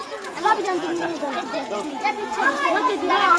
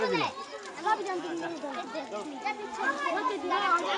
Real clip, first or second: second